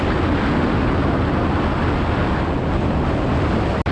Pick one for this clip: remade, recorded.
recorded